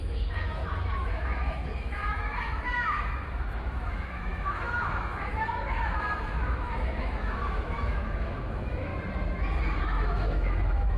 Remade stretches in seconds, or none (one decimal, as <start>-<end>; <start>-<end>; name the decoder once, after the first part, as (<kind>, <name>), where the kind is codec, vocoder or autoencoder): 0.0-8.9 (autoencoder, DAC-VAE); 9.8-11.0